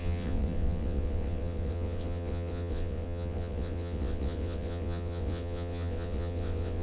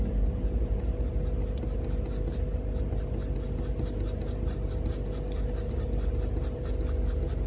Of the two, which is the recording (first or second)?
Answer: second